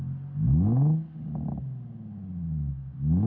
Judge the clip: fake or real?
real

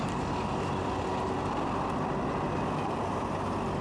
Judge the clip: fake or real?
real